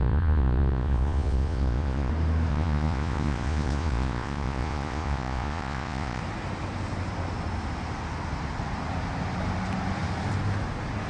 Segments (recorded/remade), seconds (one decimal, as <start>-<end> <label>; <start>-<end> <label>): 0.0-2.1 remade; 2.1-2.5 recorded; 2.5-6.2 remade; 6.2-11.1 recorded